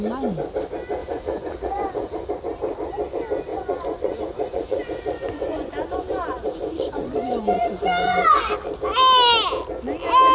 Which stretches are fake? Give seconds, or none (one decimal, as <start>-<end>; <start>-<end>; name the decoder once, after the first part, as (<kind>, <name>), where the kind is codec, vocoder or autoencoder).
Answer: 1.0-2.3 (vocoder, Vocos); 3.5-8.4